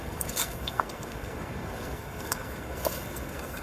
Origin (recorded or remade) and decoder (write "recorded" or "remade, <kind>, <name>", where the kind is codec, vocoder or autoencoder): remade, codec, SNAC